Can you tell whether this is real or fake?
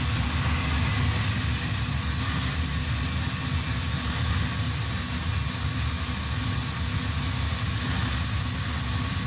real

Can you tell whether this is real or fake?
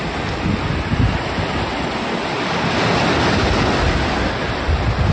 real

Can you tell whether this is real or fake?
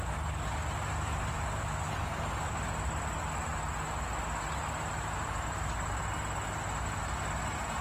real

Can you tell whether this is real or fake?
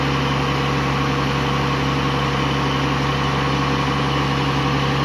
real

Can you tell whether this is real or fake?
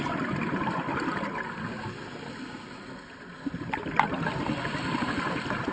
real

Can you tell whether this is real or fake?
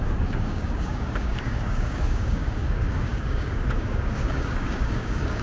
fake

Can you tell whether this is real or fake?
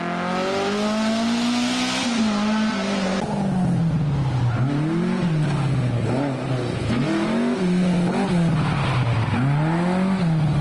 real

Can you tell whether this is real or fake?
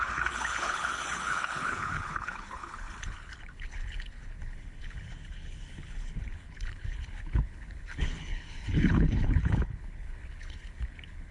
fake